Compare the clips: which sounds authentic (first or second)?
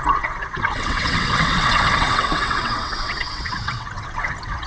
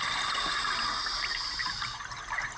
second